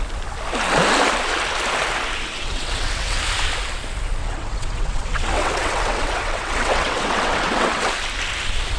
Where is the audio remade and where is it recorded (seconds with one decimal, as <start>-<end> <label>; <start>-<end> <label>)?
0.0-2.3 recorded; 2.3-3.2 remade; 3.2-4.2 recorded; 4.2-7.9 remade; 7.9-8.8 recorded